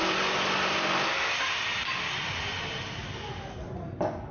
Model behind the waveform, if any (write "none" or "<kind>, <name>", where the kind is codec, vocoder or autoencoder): none